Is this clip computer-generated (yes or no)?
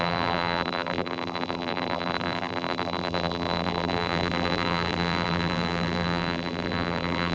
yes